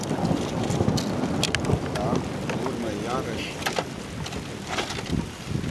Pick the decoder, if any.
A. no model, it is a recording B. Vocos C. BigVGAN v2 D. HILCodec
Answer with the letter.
A